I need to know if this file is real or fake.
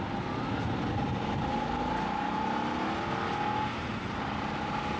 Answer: real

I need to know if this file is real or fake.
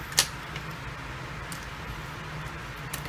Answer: real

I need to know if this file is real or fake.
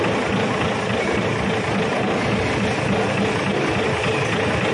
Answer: real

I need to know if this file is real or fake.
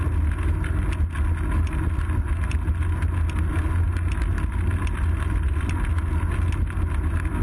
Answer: real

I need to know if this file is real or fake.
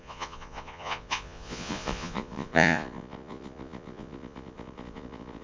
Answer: fake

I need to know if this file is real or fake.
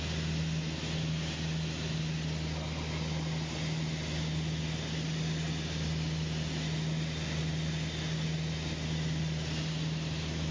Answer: real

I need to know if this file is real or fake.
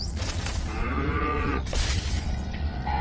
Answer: fake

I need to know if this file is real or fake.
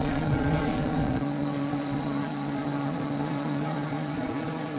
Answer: fake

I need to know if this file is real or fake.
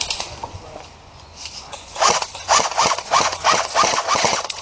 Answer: fake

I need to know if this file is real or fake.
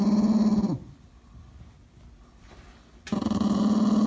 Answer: real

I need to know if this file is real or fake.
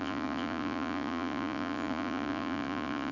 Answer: fake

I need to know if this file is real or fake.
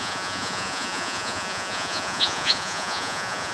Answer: fake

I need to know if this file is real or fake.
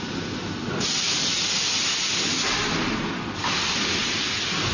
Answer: real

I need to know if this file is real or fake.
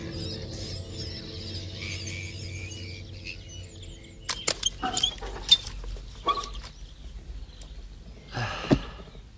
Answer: real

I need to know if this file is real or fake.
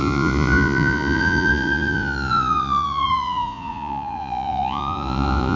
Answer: fake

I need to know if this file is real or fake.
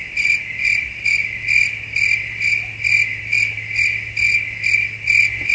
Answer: real